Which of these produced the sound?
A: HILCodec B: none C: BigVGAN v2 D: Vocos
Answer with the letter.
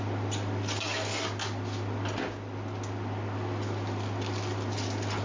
B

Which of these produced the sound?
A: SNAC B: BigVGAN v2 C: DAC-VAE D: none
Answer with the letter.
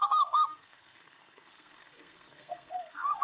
A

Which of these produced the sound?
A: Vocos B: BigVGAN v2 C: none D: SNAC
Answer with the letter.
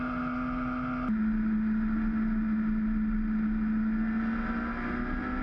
C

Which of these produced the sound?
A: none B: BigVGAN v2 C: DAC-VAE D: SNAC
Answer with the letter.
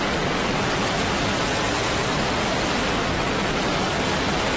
A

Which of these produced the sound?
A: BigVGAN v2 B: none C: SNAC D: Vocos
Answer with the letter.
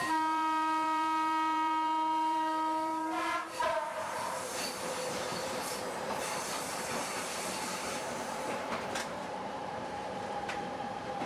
A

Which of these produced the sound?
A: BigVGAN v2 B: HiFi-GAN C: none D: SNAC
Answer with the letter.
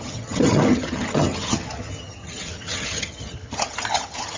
B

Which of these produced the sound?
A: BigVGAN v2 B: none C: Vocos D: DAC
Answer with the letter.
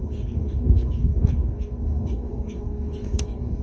D